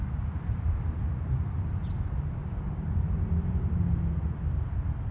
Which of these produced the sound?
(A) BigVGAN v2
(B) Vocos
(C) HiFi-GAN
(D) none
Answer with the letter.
D